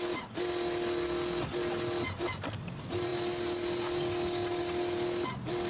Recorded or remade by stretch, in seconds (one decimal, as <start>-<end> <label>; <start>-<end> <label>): 0.0-5.7 recorded